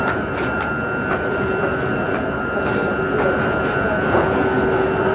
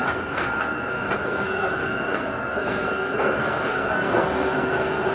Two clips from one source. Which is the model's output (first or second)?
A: second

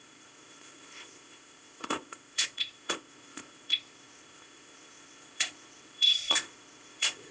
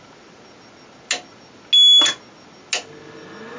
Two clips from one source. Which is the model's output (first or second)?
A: first